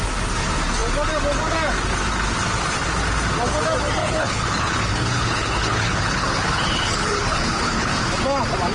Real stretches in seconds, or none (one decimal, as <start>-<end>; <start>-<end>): 0.0-4.0; 8.1-8.7

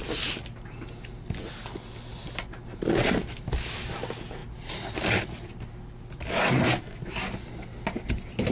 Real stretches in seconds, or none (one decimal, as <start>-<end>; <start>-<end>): 0.0-8.5

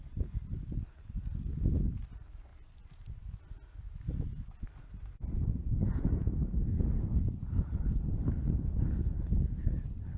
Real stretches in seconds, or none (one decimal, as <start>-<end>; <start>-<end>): 0.0-7.1

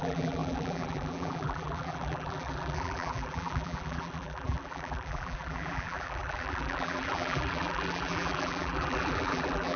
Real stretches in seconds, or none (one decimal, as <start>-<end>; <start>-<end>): none